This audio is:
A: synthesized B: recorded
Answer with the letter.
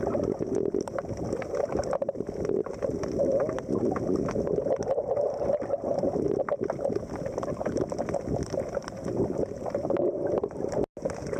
B